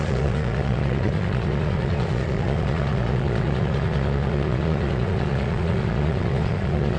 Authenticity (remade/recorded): remade